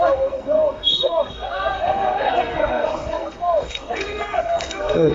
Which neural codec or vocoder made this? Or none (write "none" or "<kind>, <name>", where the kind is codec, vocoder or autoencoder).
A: codec, SNAC